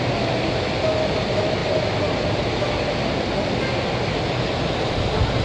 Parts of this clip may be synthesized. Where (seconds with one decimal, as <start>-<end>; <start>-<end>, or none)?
none